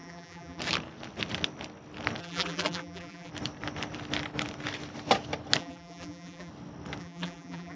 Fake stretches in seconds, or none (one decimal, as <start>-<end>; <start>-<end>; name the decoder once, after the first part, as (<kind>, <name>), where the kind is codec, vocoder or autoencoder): 0.0-0.6 (vocoder, BigVGAN v2); 2.2-3.3; 5.6-6.5; 7.0-7.8